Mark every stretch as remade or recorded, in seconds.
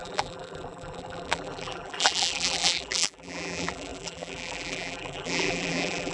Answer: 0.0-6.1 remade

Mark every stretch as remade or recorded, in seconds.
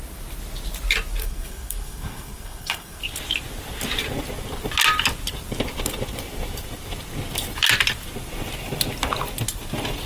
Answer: 0.0-1.2 recorded; 1.2-3.0 remade; 3.0-10.1 recorded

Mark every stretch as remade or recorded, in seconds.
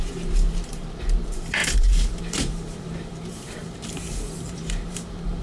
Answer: 0.0-5.4 remade